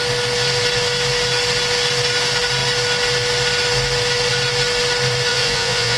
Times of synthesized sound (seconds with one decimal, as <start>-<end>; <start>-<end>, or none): 5.3-6.0